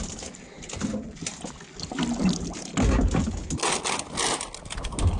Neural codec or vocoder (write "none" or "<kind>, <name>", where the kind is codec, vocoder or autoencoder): none